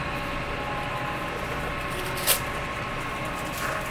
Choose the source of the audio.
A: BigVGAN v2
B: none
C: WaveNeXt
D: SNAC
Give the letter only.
B